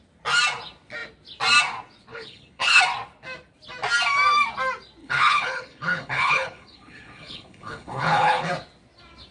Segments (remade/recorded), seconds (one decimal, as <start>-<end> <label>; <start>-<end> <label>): 0.0-2.1 recorded; 2.1-2.8 remade; 2.8-5.0 recorded; 5.0-8.5 remade; 8.5-9.3 recorded